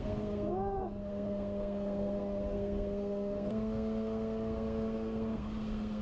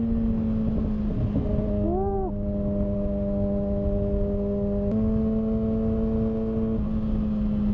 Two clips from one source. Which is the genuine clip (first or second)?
second